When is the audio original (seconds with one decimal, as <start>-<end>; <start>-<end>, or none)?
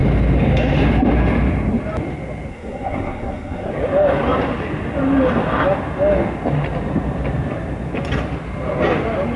0.0-2.5; 3.7-9.4